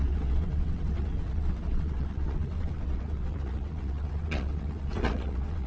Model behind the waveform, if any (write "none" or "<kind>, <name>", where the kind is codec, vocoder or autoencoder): vocoder, WaveNeXt